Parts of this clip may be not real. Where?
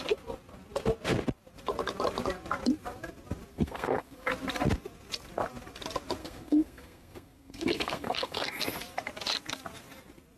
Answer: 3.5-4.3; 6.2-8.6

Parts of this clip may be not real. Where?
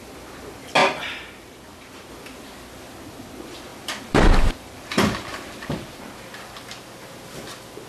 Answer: 0.8-2.1; 3.7-7.3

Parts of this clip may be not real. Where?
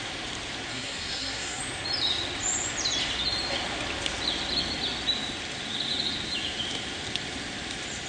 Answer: 0.7-1.6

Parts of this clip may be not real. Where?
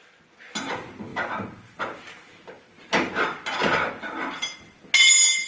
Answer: none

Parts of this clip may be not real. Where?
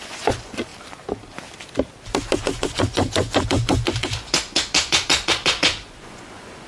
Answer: 0.0-0.7; 2.4-6.7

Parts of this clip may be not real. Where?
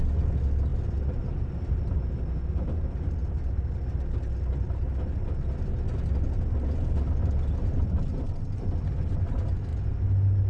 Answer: none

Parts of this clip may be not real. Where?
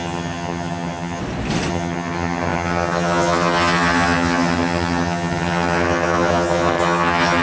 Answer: 0.0-1.2; 1.7-7.4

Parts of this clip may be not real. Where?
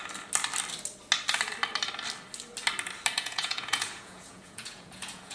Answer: 3.2-5.3